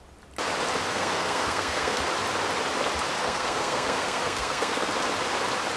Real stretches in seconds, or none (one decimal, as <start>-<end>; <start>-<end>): 0.0-0.9; 2.0-3.2; 4.9-5.8